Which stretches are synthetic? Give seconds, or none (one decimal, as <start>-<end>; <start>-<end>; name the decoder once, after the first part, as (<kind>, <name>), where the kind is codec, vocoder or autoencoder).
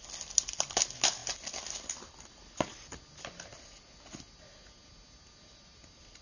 none